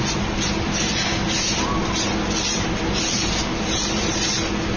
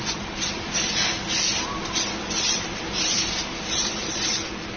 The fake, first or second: second